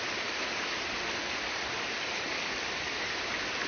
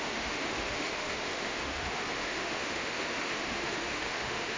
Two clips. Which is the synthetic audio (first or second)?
second